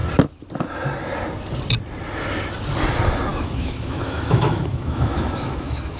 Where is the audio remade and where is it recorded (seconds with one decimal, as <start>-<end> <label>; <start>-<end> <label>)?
0.0-3.3 recorded; 3.3-6.0 remade